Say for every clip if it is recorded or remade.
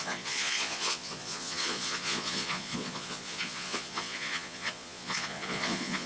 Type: remade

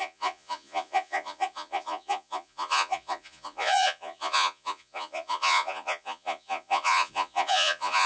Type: remade